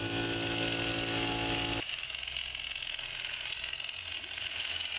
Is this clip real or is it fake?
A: real